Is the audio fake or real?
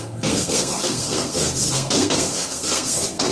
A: fake